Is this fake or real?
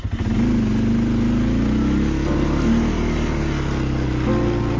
real